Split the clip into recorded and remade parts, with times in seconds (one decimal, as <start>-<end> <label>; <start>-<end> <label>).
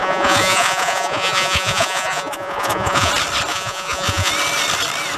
0.0-3.1 remade; 3.1-3.5 recorded; 3.5-4.3 remade; 4.3-5.2 recorded